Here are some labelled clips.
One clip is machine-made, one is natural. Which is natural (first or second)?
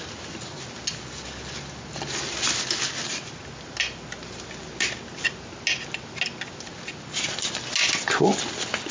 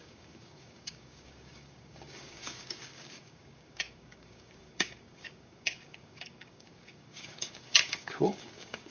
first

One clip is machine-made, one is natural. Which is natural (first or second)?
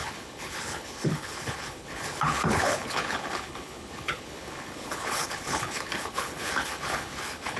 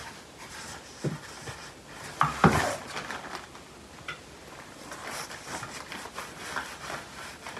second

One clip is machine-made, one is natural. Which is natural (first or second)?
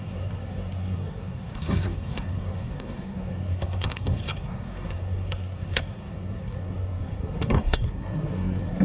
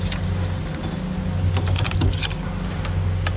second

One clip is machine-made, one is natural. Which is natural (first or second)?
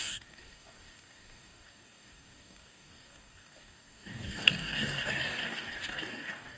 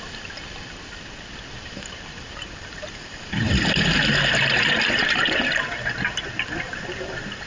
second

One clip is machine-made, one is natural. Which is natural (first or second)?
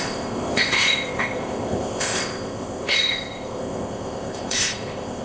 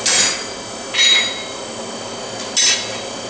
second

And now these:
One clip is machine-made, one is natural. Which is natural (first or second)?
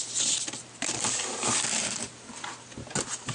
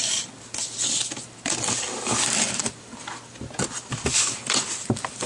first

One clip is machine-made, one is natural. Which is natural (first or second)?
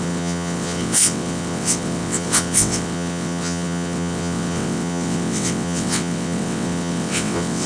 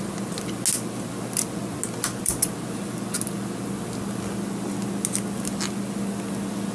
second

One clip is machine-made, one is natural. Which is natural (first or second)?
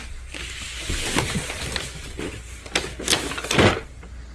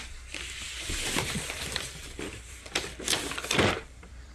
first